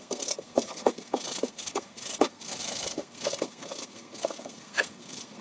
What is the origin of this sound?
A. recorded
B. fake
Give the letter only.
B